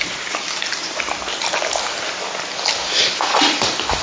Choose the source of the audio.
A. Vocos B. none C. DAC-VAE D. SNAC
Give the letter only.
B